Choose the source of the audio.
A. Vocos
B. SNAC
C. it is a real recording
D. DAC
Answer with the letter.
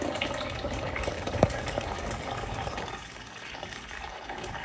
D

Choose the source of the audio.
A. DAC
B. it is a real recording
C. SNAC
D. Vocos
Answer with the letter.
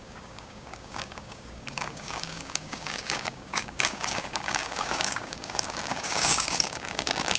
A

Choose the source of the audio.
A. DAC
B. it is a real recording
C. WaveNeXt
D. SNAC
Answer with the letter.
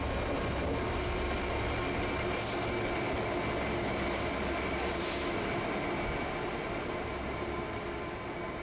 B